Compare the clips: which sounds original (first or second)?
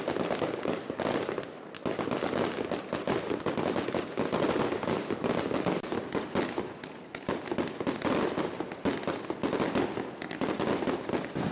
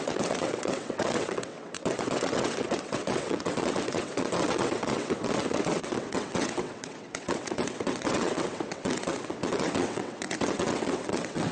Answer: first